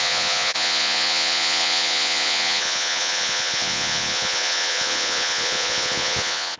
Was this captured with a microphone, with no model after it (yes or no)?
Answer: no